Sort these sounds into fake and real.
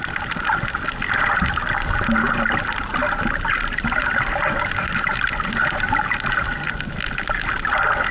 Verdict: real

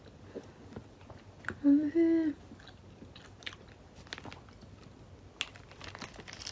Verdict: real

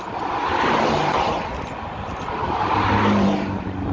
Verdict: real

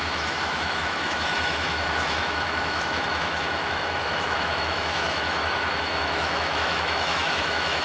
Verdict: fake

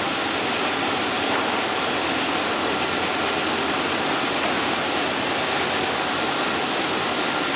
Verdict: real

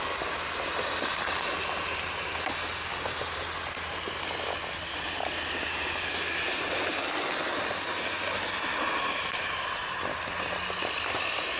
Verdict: real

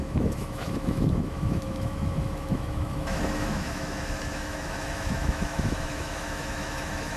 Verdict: fake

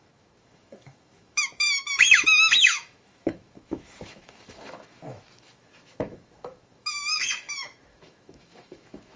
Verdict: fake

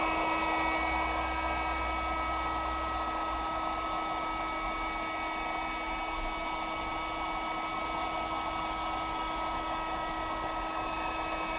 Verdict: real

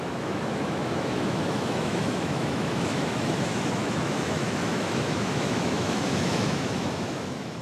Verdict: fake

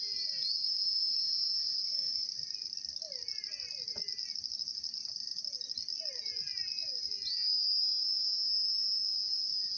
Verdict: real